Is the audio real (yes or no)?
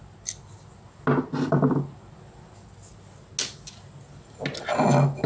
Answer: yes